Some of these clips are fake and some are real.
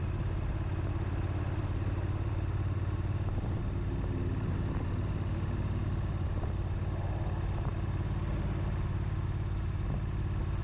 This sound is real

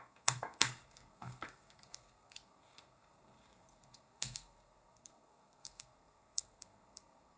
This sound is fake